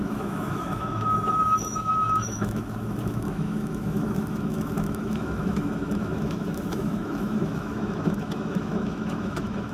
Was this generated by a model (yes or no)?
yes